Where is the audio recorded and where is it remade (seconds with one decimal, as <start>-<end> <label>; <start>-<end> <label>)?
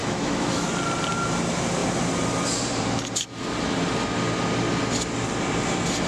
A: 0.0-0.7 remade; 0.7-6.1 recorded